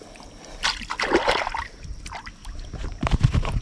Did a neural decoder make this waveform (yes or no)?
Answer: no